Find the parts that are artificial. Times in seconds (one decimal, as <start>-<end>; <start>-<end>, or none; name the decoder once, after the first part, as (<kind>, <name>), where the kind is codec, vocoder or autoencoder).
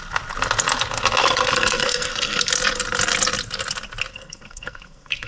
1.2-2.5 (codec, SNAC); 4.1-5.3